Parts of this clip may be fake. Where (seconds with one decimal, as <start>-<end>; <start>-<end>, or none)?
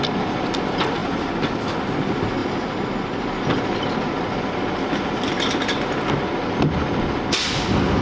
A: none